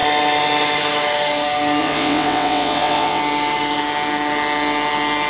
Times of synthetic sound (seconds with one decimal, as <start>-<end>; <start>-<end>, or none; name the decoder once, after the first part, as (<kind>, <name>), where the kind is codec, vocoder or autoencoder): 1.8-3.2 (vocoder, WaveNeXt)